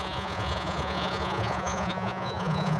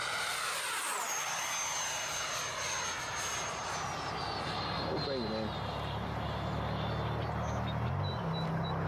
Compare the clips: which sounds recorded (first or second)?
second